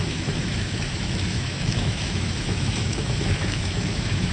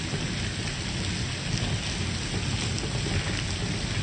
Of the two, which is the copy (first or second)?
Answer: first